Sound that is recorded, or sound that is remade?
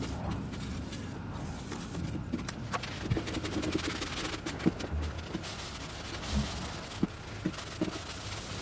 recorded